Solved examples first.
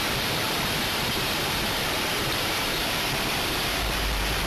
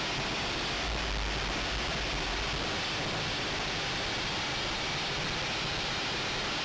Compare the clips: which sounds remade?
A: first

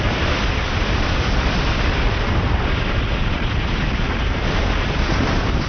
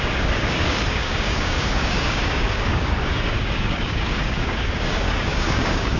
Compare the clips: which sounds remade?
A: second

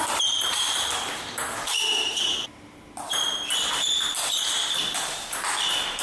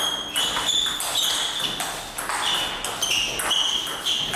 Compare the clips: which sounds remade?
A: first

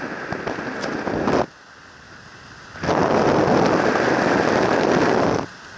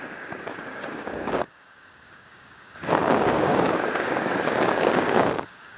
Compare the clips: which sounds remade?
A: second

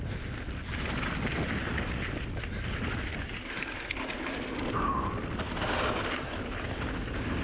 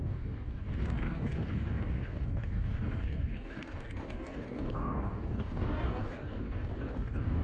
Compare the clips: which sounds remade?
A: second